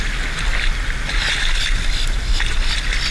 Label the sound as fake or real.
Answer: real